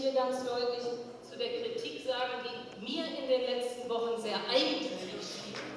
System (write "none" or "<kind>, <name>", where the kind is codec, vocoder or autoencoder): none